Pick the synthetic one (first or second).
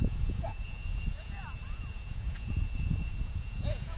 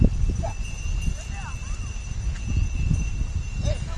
first